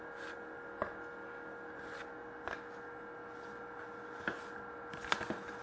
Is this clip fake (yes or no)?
no